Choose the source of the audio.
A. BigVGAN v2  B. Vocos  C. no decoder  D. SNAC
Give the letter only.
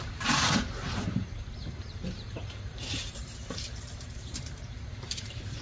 A